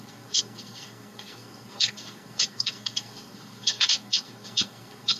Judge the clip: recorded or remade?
remade